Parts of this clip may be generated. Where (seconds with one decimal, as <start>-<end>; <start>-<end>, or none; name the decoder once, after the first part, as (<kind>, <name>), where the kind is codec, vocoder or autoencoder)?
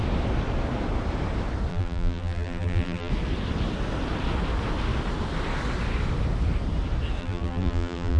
1.7-3.1 (vocoder, BigVGAN v2); 7.2-8.2